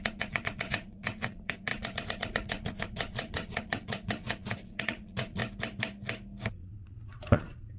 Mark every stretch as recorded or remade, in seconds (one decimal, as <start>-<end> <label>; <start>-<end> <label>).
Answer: 0.0-5.4 remade; 5.4-6.5 recorded; 6.5-7.8 remade